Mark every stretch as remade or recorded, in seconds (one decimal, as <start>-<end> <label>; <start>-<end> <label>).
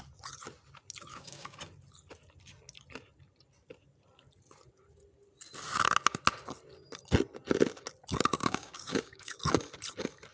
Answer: 0.0-1.1 recorded; 1.1-1.6 remade; 1.6-8.4 recorded; 8.4-9.4 remade; 9.4-10.3 recorded